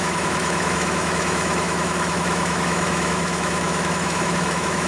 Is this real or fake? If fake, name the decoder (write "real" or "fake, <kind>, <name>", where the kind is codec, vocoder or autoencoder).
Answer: fake, autoencoder, DAC-VAE